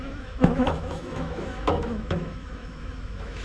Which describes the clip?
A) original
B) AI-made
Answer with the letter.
B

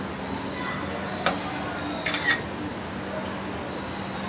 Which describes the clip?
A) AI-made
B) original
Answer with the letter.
B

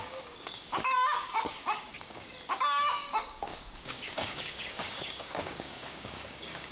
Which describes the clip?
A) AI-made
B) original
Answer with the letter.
A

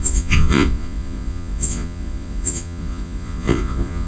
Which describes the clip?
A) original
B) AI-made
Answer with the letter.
B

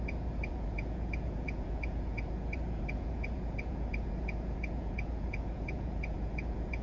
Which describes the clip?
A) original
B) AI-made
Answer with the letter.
B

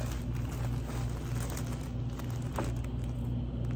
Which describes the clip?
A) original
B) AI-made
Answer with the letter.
A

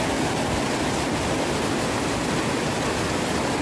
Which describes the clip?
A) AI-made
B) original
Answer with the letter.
B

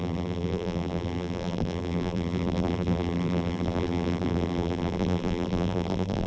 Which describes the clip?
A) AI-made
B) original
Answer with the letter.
A